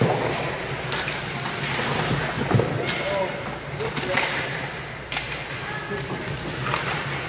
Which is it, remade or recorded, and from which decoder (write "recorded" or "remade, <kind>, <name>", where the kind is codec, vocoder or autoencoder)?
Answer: recorded